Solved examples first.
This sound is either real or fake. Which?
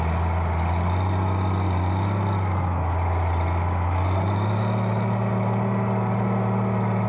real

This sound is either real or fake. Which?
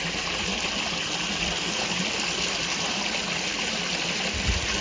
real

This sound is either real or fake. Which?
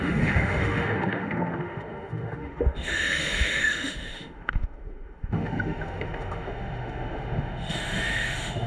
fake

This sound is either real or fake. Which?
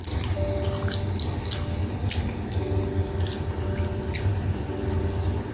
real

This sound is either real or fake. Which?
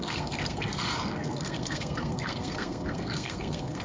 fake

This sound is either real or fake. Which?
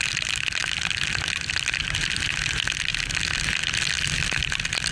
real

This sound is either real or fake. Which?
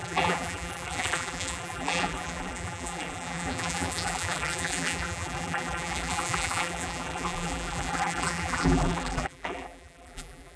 fake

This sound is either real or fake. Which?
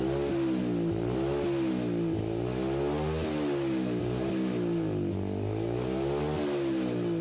real